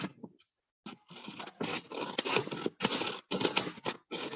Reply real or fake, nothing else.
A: real